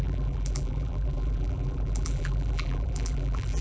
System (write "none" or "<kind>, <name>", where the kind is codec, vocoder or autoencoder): vocoder, BigVGAN v2